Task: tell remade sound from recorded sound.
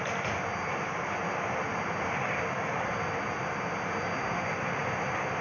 recorded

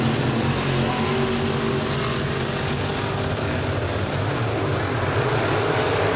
recorded